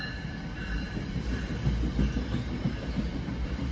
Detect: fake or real real